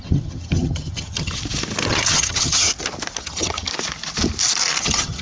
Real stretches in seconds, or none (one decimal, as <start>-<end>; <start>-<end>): 1.4-1.9; 2.7-3.2; 3.7-4.8